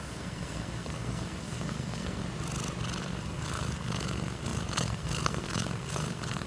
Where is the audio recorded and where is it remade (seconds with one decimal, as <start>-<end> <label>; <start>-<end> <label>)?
0.0-2.2 remade; 2.2-3.0 recorded; 3.0-6.5 remade